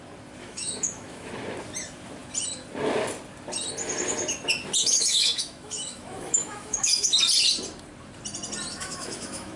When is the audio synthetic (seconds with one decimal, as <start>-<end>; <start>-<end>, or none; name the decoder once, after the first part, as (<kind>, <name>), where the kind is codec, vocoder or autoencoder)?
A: 0.4-1.3 (autoencoder, DAC-VAE); 4.8-7.2; 8.7-9.6